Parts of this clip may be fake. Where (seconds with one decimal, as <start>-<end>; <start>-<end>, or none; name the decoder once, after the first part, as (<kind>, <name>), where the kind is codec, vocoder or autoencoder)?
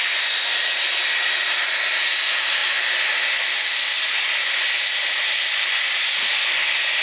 none